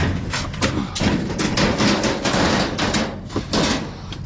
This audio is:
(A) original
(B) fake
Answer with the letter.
A